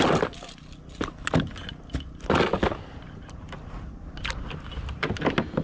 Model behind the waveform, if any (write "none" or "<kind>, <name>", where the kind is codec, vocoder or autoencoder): none